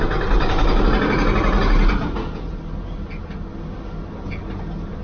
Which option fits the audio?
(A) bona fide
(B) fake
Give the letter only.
A